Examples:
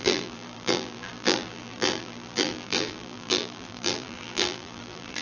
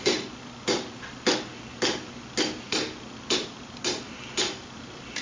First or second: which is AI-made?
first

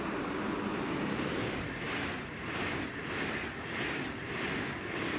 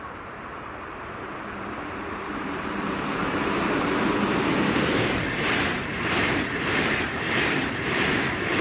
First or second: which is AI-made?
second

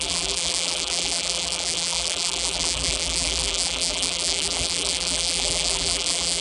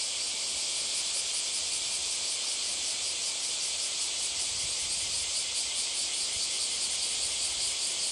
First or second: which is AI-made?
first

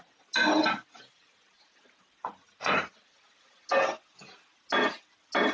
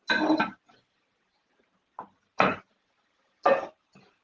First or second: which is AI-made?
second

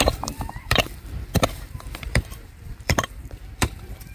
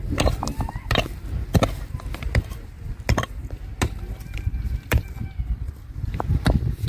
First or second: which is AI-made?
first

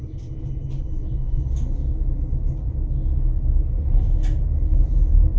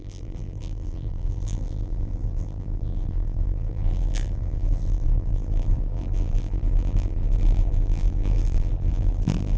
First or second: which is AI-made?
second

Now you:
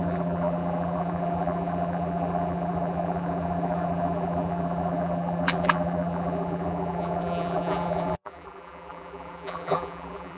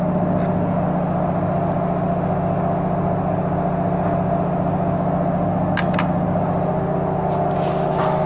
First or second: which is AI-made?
first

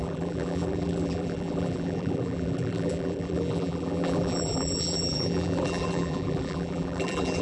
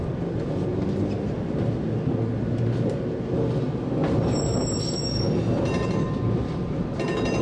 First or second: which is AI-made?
first